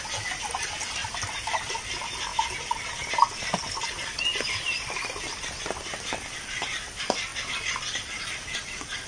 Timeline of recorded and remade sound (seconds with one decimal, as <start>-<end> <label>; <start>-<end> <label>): 0.0-1.0 recorded; 1.0-1.9 remade; 1.9-9.1 recorded